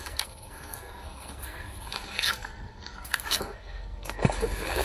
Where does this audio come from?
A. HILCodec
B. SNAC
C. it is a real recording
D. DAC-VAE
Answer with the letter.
B